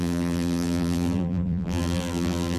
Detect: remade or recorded remade